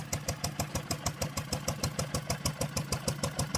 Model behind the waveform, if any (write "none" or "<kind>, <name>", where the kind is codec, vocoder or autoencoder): none